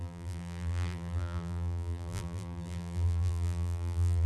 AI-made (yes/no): yes